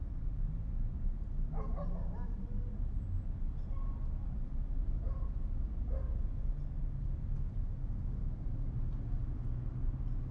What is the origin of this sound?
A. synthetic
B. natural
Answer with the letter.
B